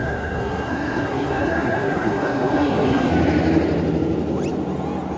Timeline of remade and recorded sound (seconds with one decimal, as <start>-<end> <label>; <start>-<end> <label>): 0.0-3.1 remade; 3.1-5.2 recorded